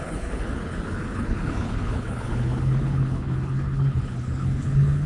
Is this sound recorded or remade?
remade